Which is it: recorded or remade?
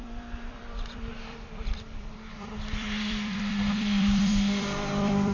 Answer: remade